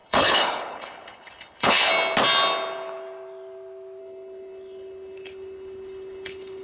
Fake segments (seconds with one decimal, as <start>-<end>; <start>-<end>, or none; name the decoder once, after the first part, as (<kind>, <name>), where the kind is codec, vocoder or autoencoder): 0.0-1.9 (codec, HILCodec); 4.0-6.6